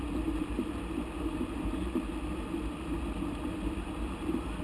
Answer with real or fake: real